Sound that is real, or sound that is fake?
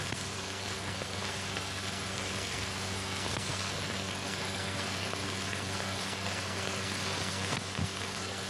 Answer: fake